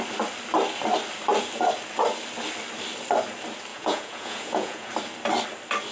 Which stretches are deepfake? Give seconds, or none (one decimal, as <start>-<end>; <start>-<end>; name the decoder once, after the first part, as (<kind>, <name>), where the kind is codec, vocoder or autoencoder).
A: 3.7-4.9 (vocoder, Vocos)